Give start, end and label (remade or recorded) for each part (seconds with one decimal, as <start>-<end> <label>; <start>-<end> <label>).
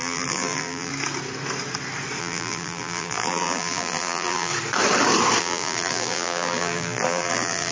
0.0-0.9 remade; 0.9-2.2 recorded; 2.2-4.5 remade; 4.5-5.4 recorded; 5.4-7.7 remade